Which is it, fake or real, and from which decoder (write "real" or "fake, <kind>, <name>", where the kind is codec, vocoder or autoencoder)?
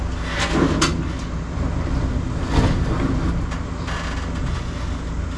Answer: real